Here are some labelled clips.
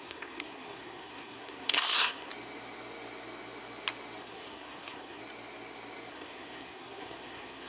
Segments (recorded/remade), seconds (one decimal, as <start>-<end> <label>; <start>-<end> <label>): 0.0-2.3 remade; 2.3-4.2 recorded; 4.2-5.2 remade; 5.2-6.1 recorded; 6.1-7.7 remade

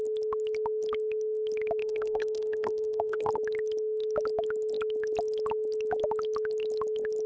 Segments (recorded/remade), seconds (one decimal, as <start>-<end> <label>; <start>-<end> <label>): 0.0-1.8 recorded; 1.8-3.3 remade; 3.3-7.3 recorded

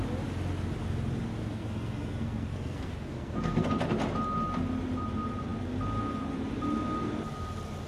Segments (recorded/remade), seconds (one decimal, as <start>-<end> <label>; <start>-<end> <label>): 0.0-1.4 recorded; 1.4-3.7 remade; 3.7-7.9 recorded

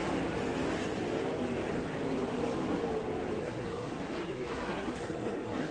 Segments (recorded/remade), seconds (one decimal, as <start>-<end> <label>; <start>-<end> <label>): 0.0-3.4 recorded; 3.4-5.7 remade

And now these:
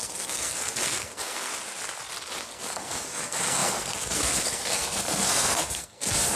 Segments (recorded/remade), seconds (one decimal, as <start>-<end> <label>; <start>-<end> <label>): 0.0-1.5 remade; 1.5-2.4 recorded; 2.4-6.4 remade

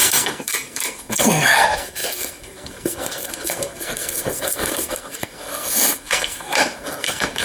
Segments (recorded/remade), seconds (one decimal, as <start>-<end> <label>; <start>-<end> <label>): 0.0-7.4 remade

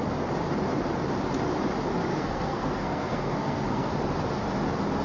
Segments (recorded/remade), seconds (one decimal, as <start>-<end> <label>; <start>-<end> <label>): 0.0-2.1 recorded; 2.1-3.9 remade; 3.9-5.0 recorded

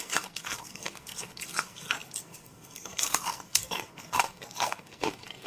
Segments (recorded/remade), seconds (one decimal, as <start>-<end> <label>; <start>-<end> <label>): 0.0-5.5 remade